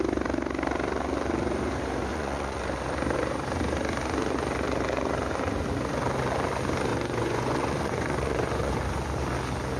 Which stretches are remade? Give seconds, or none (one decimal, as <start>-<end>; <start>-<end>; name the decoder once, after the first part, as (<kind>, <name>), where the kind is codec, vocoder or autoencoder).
2.1-2.6 (vocoder, Vocos); 6.9-8.7